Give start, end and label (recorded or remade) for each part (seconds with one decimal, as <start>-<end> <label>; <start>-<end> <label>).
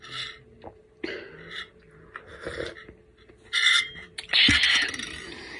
0.0-5.6 recorded